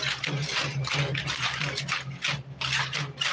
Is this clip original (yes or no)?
yes